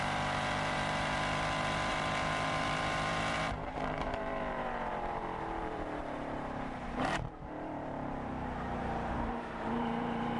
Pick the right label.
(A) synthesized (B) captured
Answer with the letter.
A